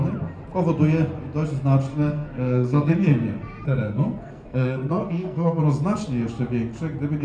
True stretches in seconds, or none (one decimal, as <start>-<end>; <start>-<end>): 0.0-1.9; 5.6-7.2

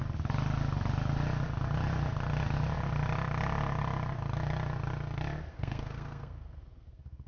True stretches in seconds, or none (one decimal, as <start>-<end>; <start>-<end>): 0.0-5.5